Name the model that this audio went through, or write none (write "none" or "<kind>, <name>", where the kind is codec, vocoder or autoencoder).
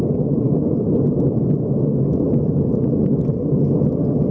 none